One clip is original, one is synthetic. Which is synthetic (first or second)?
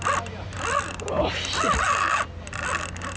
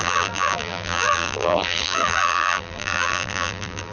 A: second